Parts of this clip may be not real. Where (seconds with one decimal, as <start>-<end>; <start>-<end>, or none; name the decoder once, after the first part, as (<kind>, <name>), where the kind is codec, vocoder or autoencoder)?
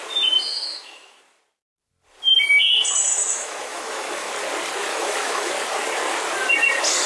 0.5-1.2 (autoencoder, DAC-VAE); 3.1-4.3; 4.9-5.5